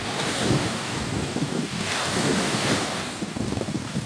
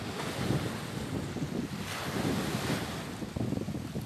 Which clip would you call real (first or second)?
second